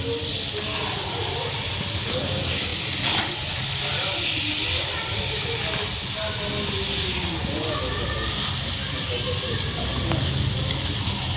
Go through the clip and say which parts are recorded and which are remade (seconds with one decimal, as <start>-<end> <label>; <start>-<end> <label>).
0.0-11.4 recorded